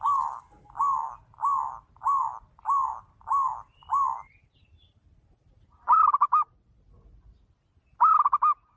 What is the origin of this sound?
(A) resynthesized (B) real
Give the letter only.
B